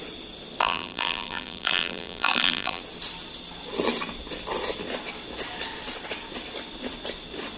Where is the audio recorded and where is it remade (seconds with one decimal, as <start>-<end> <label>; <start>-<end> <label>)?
0.0-0.6 recorded; 0.6-2.8 remade; 2.8-7.6 recorded